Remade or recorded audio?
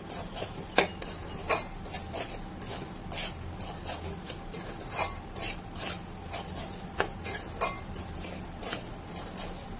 recorded